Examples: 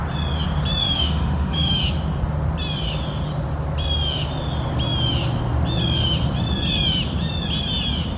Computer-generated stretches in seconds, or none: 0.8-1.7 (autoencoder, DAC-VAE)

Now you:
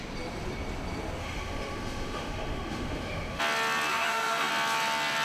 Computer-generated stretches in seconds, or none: 1.2-3.4 (autoencoder, DAC-VAE); 3.9-4.5

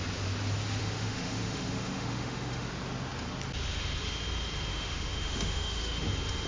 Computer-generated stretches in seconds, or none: 0.8-2.7 (autoencoder, DAC-VAE); 4.7-6.0

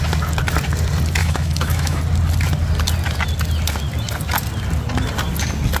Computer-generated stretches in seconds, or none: 1.2-2.0 (autoencoder, DAC-VAE)

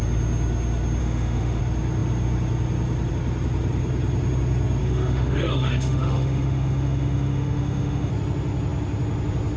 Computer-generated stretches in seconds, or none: 1.0-1.6 (autoencoder, DAC-VAE); 4.8-8.1

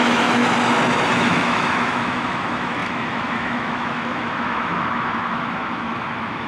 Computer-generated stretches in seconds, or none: 0.0-0.4 (autoencoder, DAC-VAE); 1.1-6.5